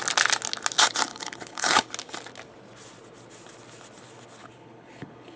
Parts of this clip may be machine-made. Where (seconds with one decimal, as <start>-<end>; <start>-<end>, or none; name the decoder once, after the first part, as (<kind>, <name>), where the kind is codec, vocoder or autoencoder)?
1.1-1.9 (codec, HILCodec); 4.4-5.4